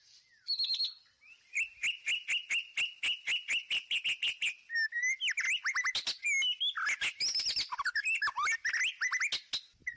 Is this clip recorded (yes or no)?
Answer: yes